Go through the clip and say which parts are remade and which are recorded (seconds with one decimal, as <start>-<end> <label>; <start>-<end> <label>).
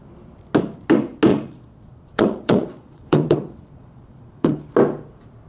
0.0-1.3 recorded; 1.3-4.6 remade; 4.6-5.5 recorded